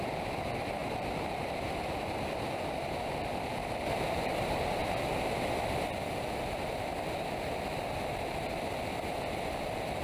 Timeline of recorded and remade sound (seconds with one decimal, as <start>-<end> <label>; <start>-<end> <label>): 0.0-0.8 recorded; 0.8-4.3 remade; 4.3-10.0 recorded

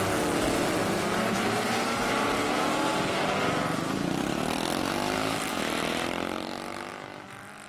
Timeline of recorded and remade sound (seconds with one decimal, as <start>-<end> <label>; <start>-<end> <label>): 0.0-0.8 recorded; 0.8-2.1 remade; 2.1-7.7 recorded

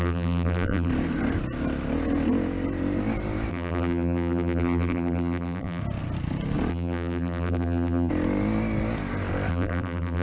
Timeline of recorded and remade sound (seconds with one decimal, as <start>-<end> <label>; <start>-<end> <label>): 0.0-0.9 remade; 0.9-3.5 recorded; 3.5-5.8 remade; 5.8-6.7 recorded; 6.7-8.1 remade; 8.1-9.5 recorded; 9.5-10.2 remade